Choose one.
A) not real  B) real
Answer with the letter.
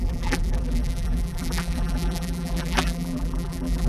A